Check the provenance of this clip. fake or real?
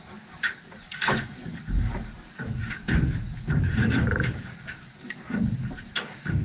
fake